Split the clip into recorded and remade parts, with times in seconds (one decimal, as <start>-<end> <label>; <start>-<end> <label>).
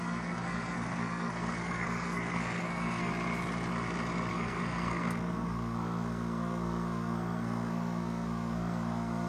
0.0-3.1 remade; 3.1-4.3 recorded; 4.3-9.3 remade